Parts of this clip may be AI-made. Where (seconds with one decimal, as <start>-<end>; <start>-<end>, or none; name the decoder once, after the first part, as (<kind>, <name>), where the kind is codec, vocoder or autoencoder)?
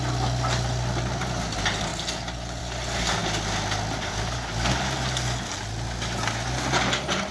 none